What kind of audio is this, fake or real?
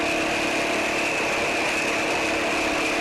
real